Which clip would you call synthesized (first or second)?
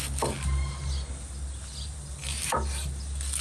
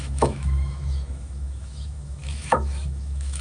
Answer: second